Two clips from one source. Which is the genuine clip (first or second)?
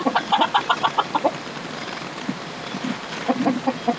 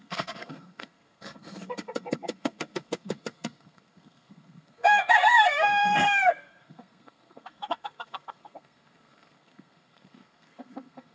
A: first